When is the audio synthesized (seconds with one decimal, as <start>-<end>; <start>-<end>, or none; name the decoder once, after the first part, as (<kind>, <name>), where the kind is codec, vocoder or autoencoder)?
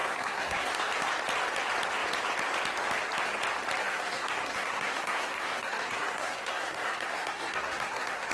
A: 0.0-0.7 (codec, SNAC); 3.8-8.3